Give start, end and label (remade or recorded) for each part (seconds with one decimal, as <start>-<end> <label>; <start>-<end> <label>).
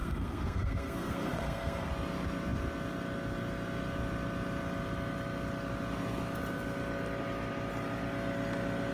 0.0-1.9 remade; 1.9-8.9 recorded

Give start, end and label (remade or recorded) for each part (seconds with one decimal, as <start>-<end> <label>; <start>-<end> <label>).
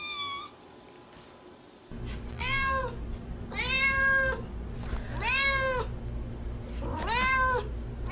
0.0-0.4 remade; 0.4-2.3 recorded; 2.3-2.8 remade; 2.8-8.1 recorded